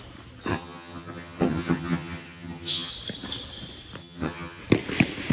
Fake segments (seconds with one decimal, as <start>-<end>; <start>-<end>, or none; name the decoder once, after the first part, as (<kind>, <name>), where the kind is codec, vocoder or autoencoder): 0.5-2.9 (vocoder, HiFi-GAN); 4.0-4.6